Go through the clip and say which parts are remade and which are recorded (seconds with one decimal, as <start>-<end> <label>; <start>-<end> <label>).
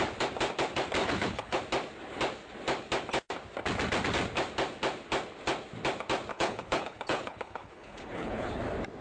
0.0-1.0 recorded; 1.0-1.6 remade; 1.6-6.3 recorded; 6.3-8.6 remade; 8.6-9.0 recorded